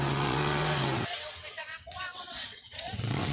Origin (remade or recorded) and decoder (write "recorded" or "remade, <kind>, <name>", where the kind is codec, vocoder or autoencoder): remade, vocoder, WaveNeXt